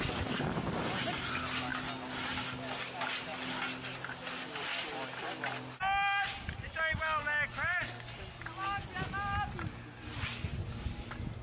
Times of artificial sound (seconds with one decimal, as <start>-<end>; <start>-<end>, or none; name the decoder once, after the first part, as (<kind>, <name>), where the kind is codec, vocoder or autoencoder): none